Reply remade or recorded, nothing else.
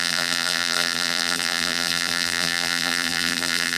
remade